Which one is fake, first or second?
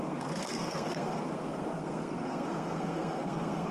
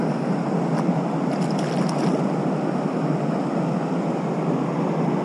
first